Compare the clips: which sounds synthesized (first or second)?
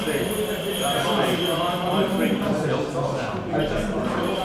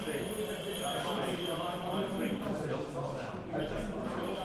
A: second